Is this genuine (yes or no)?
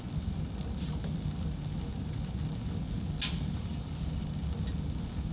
yes